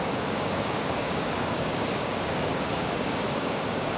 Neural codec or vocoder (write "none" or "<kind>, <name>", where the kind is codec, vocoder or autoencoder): codec, DAC